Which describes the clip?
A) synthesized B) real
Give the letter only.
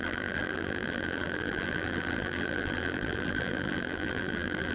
A